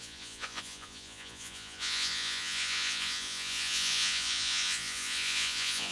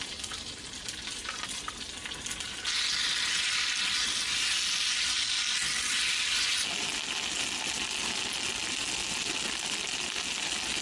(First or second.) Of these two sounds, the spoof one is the first